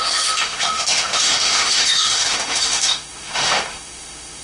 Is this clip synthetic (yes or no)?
yes